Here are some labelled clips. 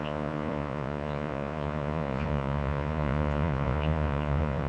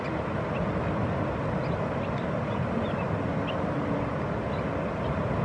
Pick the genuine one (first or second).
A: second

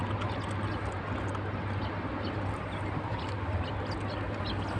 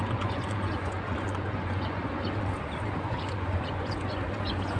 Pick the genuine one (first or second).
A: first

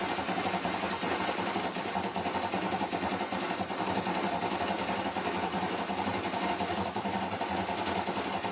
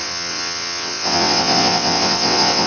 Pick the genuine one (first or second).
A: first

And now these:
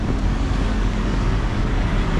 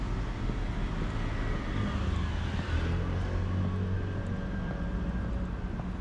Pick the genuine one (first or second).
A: second